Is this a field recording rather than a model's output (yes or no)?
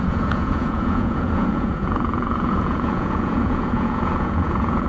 no